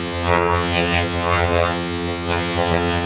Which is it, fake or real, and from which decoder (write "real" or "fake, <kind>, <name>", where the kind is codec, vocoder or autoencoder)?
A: fake, vocoder, HiFi-GAN